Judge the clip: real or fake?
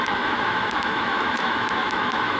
fake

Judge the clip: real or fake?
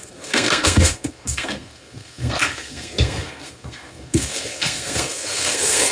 fake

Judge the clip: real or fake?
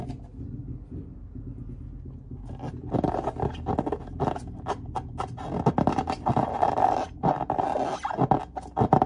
real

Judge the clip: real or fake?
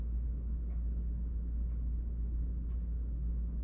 real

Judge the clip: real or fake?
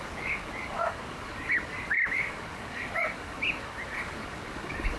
fake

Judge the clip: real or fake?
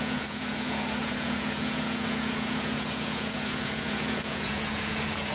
fake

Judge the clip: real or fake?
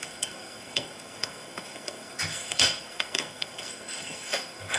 fake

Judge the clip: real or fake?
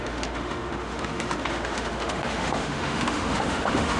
fake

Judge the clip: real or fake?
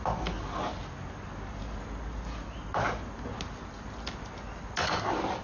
real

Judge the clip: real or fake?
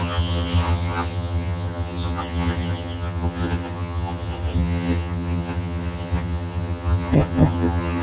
fake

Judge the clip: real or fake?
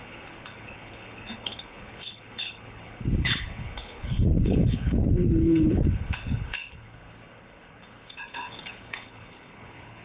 fake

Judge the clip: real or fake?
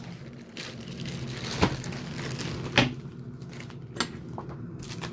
real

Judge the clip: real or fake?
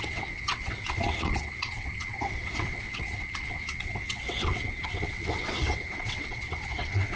fake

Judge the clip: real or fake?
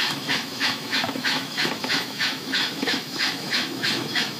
fake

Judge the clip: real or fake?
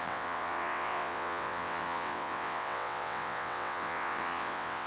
fake